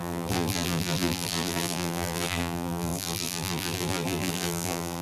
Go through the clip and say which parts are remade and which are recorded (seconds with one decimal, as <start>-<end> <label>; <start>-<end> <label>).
0.0-5.0 remade